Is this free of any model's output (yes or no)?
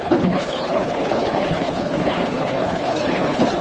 no